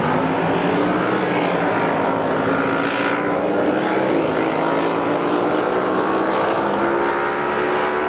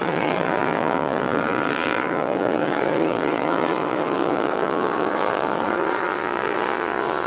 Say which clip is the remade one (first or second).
second